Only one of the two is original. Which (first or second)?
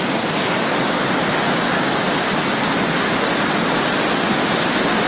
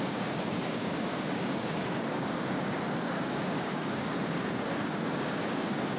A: first